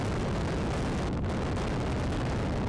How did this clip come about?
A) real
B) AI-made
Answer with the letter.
A